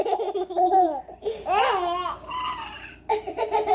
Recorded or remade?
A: recorded